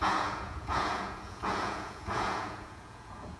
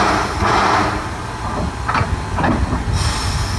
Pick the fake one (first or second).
first